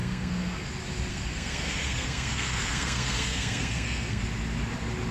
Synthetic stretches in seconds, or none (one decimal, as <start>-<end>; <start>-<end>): 0.0-0.7; 1.1-4.2